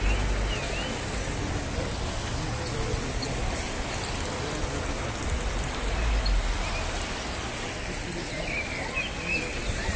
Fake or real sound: real